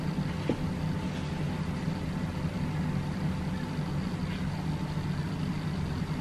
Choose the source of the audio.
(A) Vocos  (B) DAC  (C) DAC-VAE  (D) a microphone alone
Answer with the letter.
D